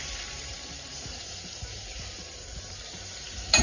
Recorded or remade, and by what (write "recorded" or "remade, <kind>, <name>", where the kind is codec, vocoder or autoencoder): remade, vocoder, BigVGAN v2